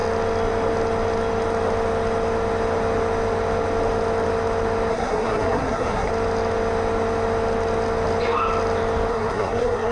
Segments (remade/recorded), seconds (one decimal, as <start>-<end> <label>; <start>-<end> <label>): 0.0-4.9 recorded; 4.9-6.1 remade; 6.1-9.1 recorded; 9.1-9.9 remade